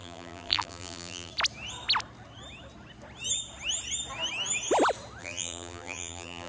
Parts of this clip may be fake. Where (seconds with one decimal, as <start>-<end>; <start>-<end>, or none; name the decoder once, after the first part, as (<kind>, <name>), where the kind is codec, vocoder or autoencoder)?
0.0-1.3 (vocoder, BigVGAN v2); 5.2-6.5